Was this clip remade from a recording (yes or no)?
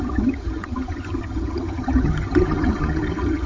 yes